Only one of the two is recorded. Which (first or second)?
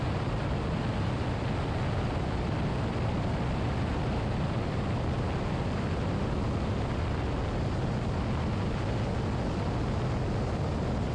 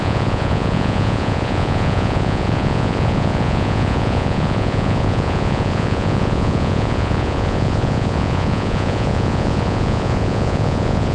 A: first